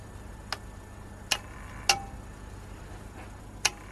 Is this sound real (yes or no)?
yes